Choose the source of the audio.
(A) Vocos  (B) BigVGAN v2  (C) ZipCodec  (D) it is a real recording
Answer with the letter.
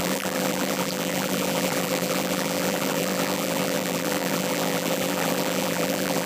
B